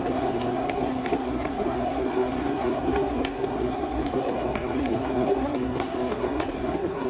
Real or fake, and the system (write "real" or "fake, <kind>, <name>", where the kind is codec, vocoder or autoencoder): fake, codec, SNAC